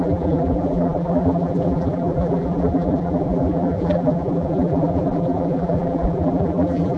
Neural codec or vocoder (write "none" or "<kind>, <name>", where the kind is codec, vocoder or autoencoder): vocoder, BigVGAN v2